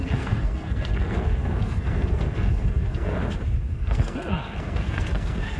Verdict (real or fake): fake